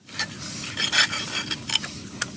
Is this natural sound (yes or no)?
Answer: yes